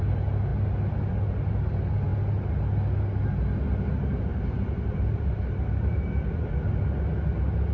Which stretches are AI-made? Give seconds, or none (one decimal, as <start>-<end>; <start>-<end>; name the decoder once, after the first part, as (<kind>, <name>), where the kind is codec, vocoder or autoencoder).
4.3-6.5 (vocoder, BigVGAN v2)